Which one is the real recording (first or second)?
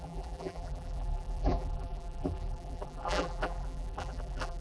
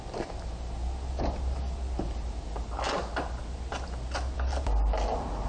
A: second